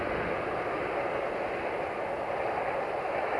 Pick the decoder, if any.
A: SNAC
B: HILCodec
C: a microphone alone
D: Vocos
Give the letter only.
C